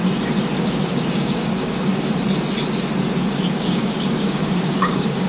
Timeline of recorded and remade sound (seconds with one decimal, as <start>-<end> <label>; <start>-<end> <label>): 0.0-0.6 recorded; 0.6-1.9 remade; 1.9-3.5 recorded; 3.5-5.3 remade